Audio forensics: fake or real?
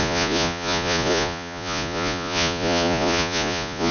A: fake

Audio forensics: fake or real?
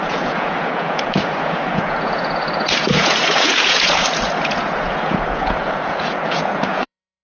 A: fake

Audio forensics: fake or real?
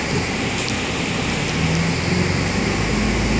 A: real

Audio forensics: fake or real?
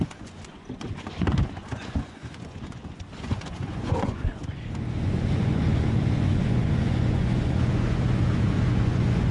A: fake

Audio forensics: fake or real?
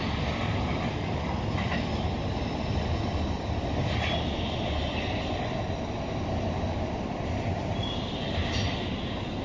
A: real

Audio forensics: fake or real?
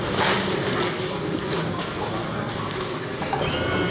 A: real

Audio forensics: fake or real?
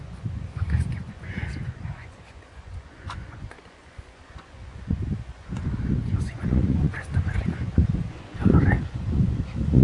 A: fake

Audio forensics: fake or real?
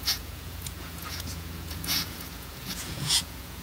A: fake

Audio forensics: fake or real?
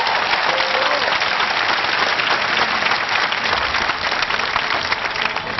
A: real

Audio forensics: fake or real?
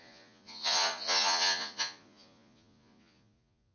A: fake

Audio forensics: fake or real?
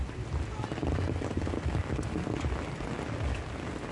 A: real